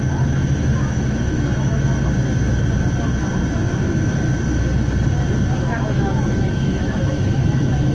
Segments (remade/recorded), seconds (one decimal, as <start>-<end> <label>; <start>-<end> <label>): 0.0-1.9 remade; 1.9-5.6 recorded; 5.6-7.9 remade